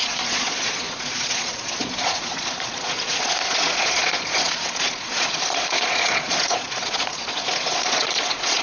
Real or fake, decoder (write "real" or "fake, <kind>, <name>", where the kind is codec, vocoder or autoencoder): fake, vocoder, Vocos